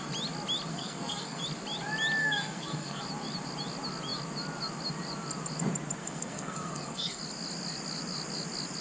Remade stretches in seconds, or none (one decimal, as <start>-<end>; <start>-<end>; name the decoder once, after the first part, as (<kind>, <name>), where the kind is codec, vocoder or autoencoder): 0.7-1.4 (codec, SNAC); 2.2-3.0; 6.0-7.2